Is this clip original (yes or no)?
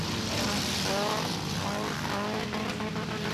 yes